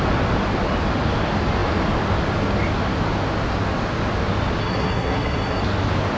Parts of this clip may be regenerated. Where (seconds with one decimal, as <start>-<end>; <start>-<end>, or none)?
4.6-5.6